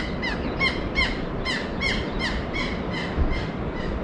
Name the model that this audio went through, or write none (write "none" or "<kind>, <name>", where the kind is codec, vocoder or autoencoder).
none